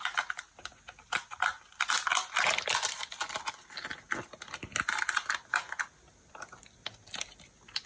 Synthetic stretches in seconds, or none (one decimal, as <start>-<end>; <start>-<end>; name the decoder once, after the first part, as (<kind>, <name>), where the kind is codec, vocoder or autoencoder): none